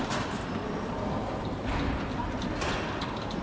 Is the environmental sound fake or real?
real